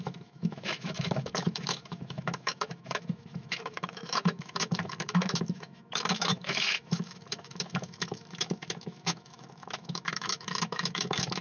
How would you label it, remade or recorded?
remade